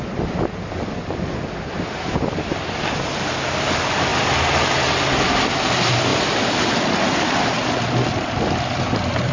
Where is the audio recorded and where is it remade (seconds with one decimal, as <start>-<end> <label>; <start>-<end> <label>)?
0.0-9.3 recorded